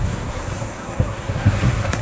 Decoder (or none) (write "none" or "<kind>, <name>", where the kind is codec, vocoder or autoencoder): codec, SNAC